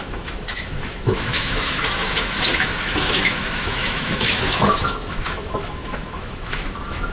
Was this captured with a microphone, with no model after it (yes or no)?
no